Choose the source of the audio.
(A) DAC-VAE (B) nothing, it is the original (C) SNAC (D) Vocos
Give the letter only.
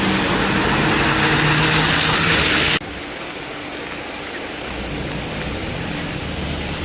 B